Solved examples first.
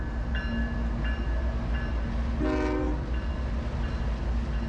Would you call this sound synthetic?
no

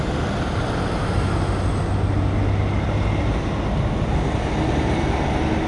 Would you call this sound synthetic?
no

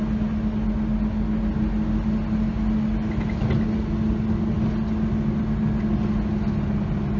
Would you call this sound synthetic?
no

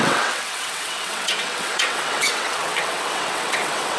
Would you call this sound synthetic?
yes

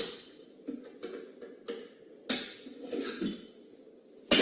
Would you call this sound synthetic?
no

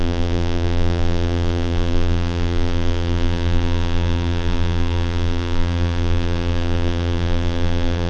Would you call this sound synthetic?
yes